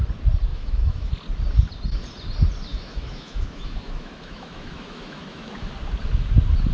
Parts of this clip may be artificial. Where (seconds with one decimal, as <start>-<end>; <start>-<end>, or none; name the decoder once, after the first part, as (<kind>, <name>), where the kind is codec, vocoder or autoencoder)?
0.5-1.1 (autoencoder, DAC-VAE); 2.7-5.7